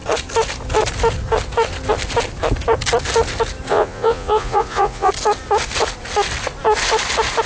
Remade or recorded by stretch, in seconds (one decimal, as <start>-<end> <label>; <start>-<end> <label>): 0.0-3.7 recorded; 3.7-5.1 remade; 5.1-7.5 recorded